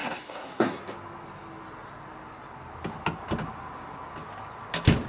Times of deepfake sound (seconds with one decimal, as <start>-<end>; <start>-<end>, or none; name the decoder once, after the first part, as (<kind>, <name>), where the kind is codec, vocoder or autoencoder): 0.0-0.8 (codec, SNAC)

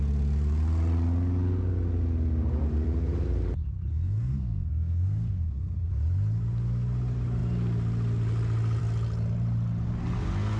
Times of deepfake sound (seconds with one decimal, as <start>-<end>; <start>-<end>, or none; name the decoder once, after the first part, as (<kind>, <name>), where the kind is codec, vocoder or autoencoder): 3.9-5.9 (codec, SNAC)

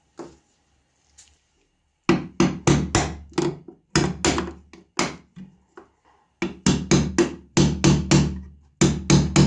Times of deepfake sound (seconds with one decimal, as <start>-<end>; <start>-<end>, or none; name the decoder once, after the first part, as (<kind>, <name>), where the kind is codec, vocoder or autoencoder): none

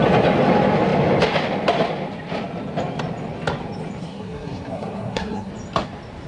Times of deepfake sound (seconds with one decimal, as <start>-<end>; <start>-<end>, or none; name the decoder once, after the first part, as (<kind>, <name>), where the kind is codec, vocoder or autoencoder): 4.0-5.5 (codec, SNAC)

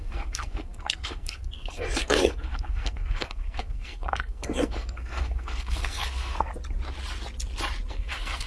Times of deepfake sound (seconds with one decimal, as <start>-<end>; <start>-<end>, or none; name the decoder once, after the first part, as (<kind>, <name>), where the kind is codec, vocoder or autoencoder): 0.0-6.5 (codec, SNAC); 7.9-8.5

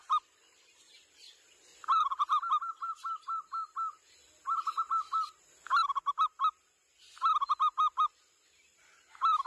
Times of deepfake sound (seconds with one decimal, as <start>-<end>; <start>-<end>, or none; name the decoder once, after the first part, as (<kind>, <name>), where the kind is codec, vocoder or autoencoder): none

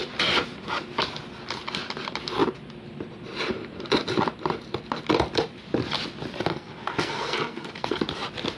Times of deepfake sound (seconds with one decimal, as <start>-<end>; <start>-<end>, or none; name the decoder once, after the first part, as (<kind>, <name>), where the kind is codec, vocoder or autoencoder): 6.5-8.0 (codec, SNAC)

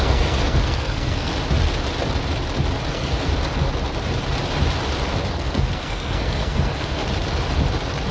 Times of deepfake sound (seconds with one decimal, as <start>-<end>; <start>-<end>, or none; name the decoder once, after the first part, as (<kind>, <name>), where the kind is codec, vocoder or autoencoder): 0.0-1.3 (codec, SNAC); 2.9-3.3; 5.3-7.0